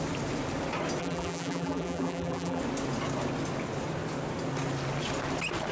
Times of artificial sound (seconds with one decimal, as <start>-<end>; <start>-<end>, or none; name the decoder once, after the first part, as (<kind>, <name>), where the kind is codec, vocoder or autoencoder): 1.0-2.6 (vocoder, BigVGAN v2)